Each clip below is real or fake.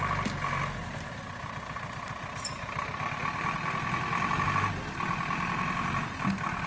real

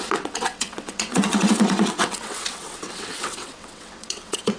fake